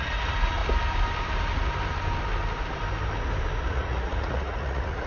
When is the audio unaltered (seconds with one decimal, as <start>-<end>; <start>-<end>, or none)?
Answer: 0.6-3.7